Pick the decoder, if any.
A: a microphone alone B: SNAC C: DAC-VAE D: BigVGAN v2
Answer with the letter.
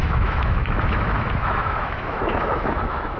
C